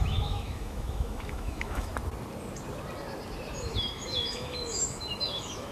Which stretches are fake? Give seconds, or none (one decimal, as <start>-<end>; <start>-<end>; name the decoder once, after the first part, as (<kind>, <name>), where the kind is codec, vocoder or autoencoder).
0.0-1.9 (autoencoder, DAC-VAE); 3.6-5.7